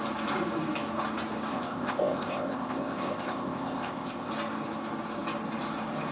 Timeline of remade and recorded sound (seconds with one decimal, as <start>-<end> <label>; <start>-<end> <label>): 0.0-1.5 recorded; 1.5-4.3 remade; 4.3-6.1 recorded